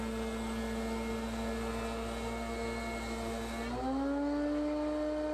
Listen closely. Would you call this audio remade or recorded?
recorded